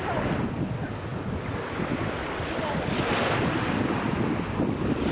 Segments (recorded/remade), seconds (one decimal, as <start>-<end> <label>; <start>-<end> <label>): 0.0-5.1 recorded